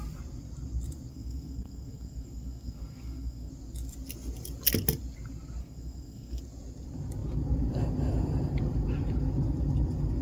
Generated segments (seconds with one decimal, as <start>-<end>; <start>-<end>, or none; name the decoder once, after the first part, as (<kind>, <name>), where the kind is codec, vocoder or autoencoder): 1.1-3.5 (codec, SNAC); 5.6-6.4